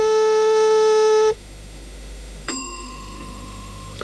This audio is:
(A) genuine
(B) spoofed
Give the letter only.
B